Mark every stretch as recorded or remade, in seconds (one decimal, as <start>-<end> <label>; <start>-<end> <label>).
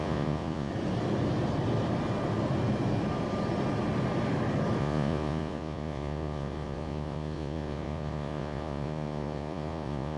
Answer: 0.0-0.7 remade; 0.7-4.8 recorded; 4.8-10.2 remade